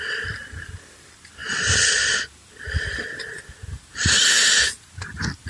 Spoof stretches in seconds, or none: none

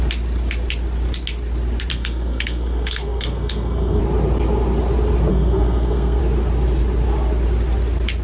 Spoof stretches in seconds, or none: 1.9-4.0; 5.3-6.2

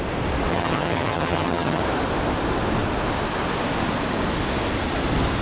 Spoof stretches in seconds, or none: 0.5-1.8

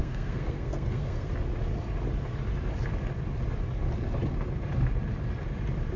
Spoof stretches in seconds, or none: 0.0-1.3

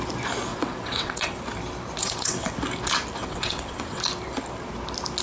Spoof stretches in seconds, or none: 0.5-1.4; 2.0-2.5; 3.2-4.0